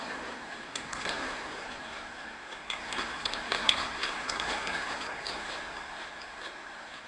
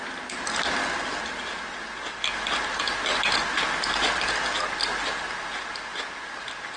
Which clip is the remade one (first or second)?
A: first